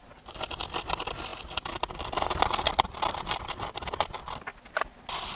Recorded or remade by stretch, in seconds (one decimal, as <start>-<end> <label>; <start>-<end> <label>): 0.0-1.3 recorded; 1.3-3.7 remade; 3.7-5.4 recorded